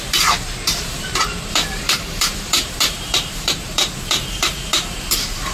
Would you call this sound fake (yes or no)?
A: yes